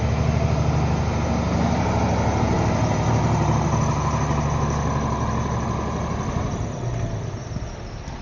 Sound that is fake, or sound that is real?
real